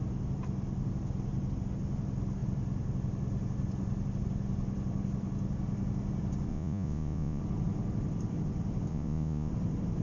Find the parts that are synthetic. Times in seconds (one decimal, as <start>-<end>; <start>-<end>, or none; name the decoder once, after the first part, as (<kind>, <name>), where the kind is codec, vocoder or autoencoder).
6.5-7.4 (vocoder, Vocos); 8.9-9.5